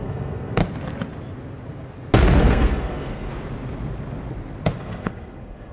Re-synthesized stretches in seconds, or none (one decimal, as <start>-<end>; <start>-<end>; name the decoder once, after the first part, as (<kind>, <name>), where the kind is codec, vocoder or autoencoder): 0.0-0.6 (codec, SNAC); 2.4-3.3; 4.8-5.7